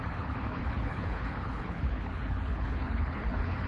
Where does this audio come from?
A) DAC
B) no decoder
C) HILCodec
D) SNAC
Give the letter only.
C